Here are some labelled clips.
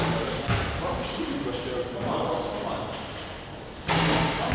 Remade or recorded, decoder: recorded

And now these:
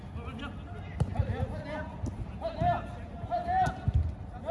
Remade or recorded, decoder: recorded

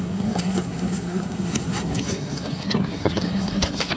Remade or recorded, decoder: remade, codec, SNAC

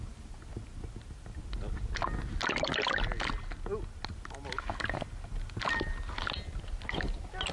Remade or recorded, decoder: recorded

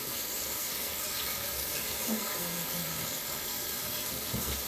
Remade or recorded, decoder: remade, codec, SNAC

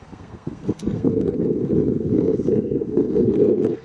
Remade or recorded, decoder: remade, codec, SNAC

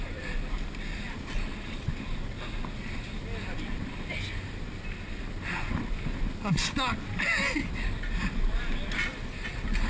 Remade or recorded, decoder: recorded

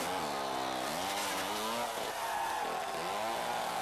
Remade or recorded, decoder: recorded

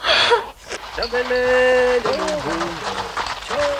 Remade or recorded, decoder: recorded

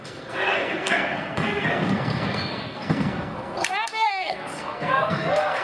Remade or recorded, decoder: remade, codec, SNAC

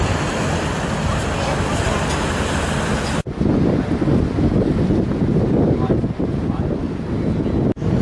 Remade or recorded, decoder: recorded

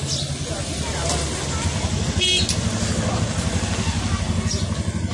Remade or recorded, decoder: recorded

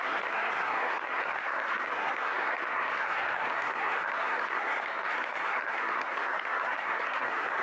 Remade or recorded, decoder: remade, codec, SNAC